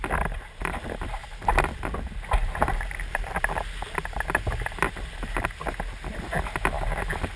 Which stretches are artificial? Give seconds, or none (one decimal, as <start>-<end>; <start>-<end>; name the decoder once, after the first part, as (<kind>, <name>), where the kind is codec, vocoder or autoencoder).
1.2-1.8 (vocoder, BigVGAN v2); 2.4-3.3